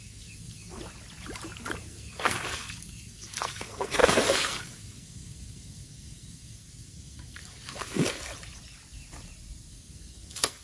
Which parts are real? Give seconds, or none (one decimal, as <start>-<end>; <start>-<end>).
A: 0.8-1.8; 8.3-9.7